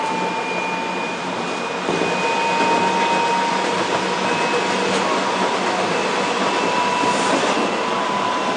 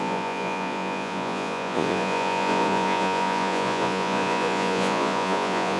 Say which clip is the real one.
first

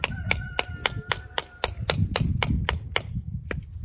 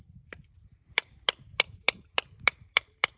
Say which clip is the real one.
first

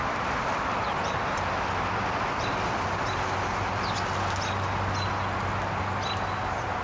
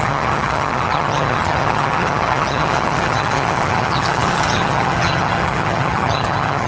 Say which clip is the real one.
first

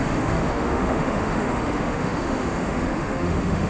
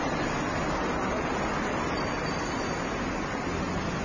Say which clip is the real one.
second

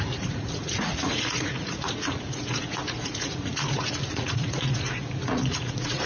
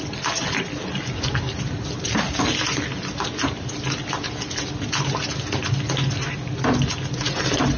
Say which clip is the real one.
second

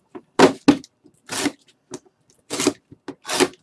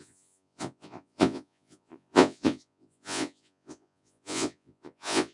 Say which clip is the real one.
first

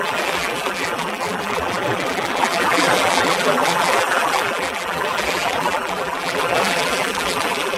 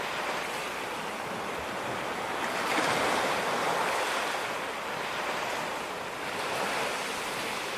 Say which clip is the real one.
second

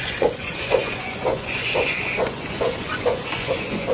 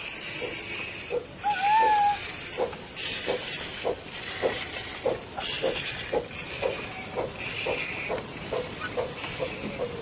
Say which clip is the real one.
second